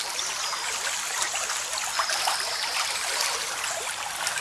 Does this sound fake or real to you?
real